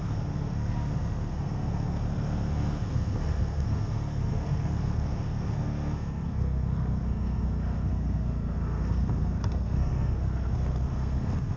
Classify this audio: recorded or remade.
remade